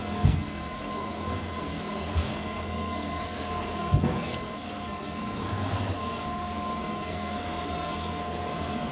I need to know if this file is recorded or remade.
remade